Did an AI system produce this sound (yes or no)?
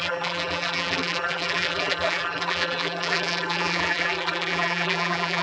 yes